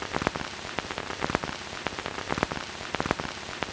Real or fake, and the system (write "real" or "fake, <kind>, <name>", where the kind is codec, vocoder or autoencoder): real